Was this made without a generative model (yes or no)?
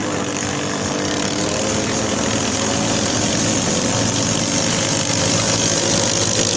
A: yes